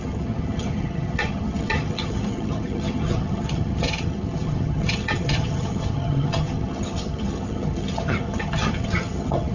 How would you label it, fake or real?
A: fake